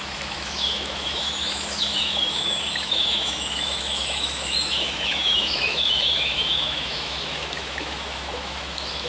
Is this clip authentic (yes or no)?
no